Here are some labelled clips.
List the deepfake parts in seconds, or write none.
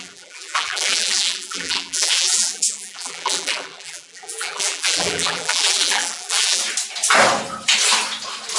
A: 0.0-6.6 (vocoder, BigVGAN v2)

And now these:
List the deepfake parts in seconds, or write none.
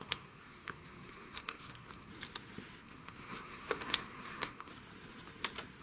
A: 0.0-2.1 (codec, SNAC); 2.8-4.7